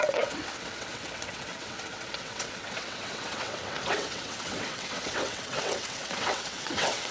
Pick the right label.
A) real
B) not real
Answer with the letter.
B